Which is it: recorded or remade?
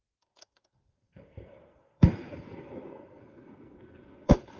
remade